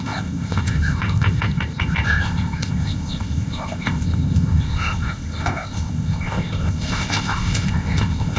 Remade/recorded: remade